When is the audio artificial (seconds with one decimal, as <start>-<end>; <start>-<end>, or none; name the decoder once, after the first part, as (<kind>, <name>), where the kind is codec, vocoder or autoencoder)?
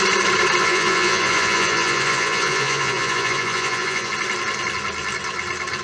0.6-4.1 (vocoder, Vocos)